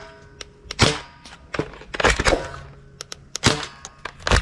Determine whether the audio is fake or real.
real